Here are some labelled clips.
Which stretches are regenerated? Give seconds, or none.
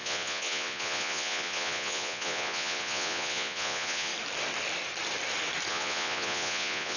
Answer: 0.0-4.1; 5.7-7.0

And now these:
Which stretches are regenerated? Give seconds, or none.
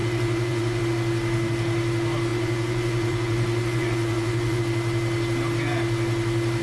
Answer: 0.0-0.8; 2.3-4.6